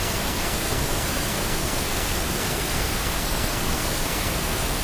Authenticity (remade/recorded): remade